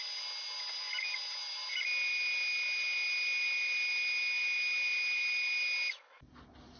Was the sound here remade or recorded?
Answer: recorded